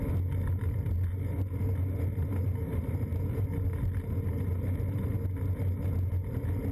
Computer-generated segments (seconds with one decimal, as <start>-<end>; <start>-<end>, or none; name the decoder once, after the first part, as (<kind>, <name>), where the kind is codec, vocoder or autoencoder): none